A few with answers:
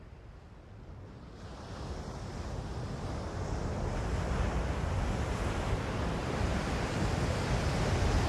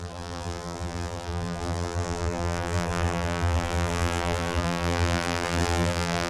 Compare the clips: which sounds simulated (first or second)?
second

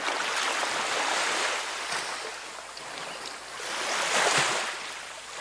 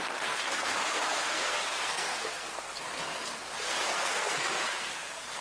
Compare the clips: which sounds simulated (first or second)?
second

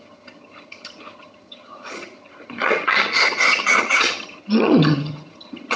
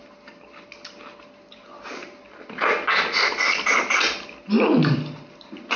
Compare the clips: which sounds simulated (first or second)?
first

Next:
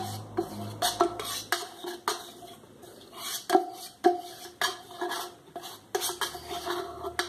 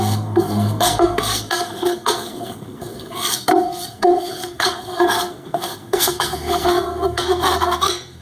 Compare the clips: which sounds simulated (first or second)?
second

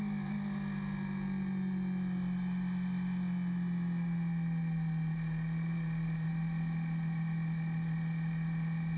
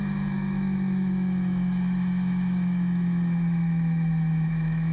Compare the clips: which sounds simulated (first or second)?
second